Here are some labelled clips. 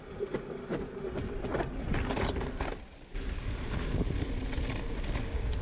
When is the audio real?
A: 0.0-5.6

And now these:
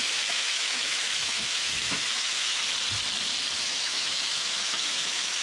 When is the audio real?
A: 2.6-3.6

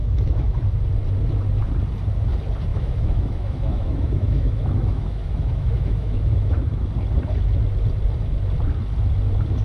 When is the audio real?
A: 0.6-2.7; 6.9-9.6

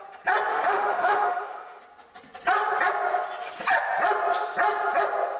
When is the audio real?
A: 0.0-0.5; 1.8-5.4

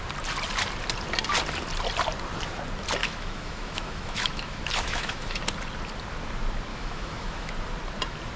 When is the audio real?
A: 0.0-3.0; 5.4-6.7; 7.5-8.4